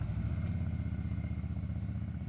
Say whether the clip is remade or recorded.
recorded